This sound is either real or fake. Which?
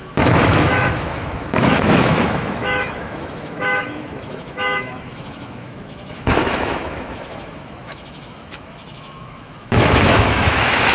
fake